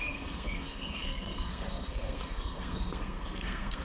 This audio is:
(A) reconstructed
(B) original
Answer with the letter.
A